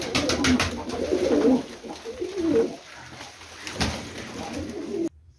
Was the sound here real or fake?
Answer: real